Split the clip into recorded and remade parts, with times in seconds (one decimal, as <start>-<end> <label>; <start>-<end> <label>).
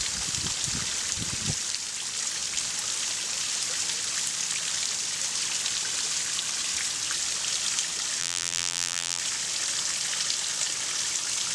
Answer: 0.0-8.2 recorded; 8.2-9.2 remade; 9.2-11.5 recorded